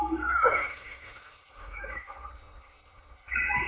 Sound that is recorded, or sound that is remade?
remade